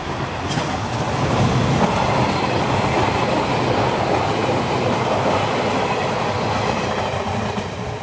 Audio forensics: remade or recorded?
recorded